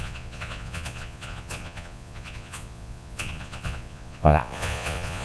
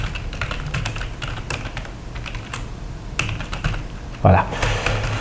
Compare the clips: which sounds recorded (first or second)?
second